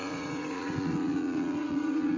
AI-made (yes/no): yes